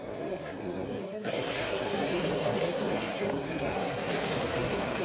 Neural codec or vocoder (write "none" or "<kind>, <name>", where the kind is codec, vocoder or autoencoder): codec, SNAC